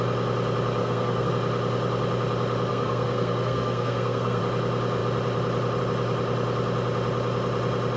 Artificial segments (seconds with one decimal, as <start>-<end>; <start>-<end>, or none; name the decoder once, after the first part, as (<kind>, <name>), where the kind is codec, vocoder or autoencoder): 0.8-1.3 (codec, SNAC); 2.7-4.4